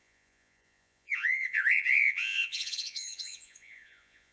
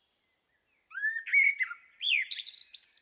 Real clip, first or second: second